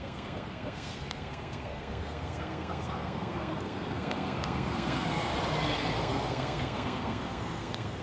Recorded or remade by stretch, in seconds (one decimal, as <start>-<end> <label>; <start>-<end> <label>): 0.0-5.3 remade; 5.3-6.0 recorded; 6.0-8.0 remade